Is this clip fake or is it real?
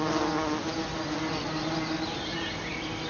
real